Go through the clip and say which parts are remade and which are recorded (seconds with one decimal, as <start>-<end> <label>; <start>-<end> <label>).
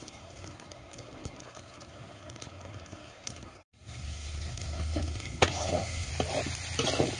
0.0-6.1 remade; 6.1-7.2 recorded